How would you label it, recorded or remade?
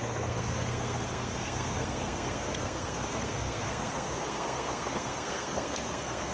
remade